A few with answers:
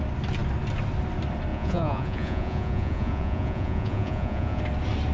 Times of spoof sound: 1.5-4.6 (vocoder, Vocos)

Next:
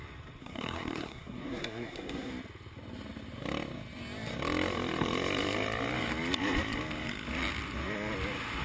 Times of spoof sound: 0.4-2.3 (codec, SNAC)

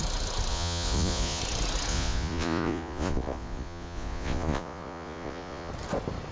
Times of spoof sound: 0.5-1.4 (vocoder, Vocos); 1.9-5.7

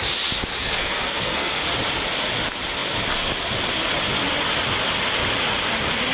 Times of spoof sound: 0.6-1.5 (codec, SNAC)

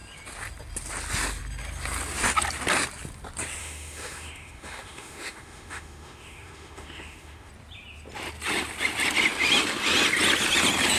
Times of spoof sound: 3.6-7.5 (autoencoder, DAC-VAE)

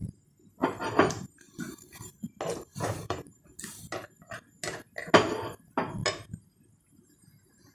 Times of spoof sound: 0.6-2.2 (vocoder, BigVGAN v2); 2.7-3.2

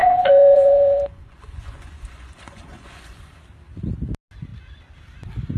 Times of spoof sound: 0.0-3.4 (vocoder, Vocos)